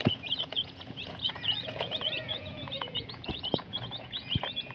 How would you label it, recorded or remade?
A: remade